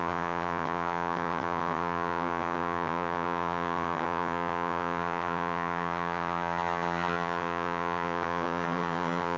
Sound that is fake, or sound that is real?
fake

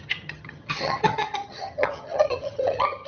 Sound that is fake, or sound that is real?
fake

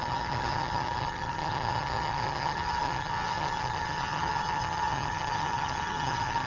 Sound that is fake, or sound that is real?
fake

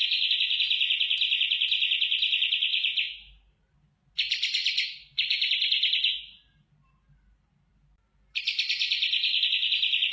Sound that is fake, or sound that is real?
real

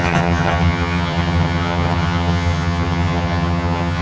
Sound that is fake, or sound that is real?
fake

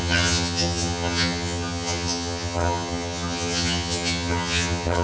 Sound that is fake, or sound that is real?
fake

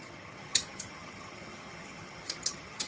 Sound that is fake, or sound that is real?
fake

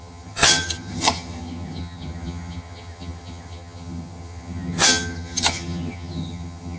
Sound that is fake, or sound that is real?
fake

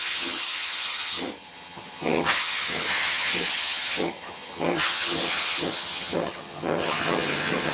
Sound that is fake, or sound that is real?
fake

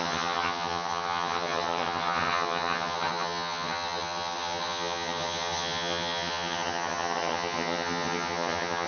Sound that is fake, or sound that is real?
fake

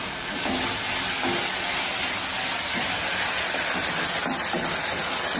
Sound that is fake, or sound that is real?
real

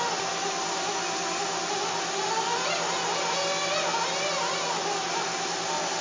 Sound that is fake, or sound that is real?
real